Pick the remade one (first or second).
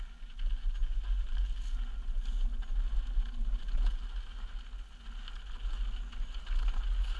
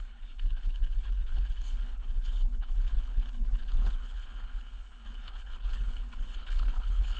second